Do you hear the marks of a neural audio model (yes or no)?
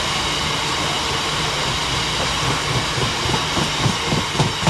no